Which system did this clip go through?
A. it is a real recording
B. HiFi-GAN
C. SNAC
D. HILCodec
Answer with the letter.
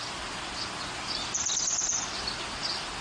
A